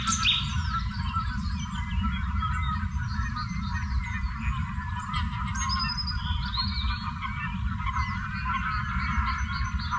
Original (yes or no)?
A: yes